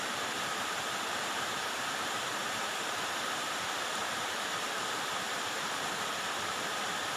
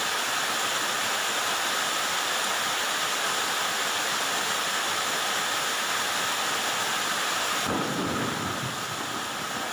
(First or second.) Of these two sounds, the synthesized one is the first